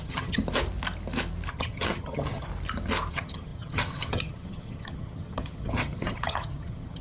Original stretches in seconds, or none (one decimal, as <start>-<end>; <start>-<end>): 0.4-1.5; 2.5-3.1